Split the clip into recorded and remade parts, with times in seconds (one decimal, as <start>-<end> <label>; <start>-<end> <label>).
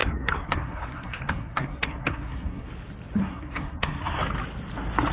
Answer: 0.0-2.7 remade; 2.7-3.2 recorded; 3.2-4.2 remade; 4.2-5.1 recorded